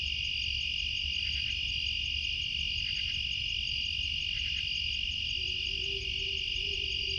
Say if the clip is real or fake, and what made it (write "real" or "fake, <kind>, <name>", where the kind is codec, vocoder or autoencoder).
real